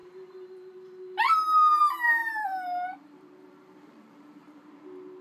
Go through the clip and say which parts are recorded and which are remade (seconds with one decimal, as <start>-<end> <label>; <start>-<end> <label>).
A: 0.0-2.2 recorded; 2.2-4.7 remade; 4.7-5.2 recorded